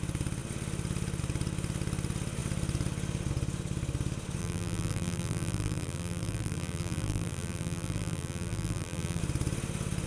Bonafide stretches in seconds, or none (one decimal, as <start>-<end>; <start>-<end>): 0.0-4.4; 9.2-10.1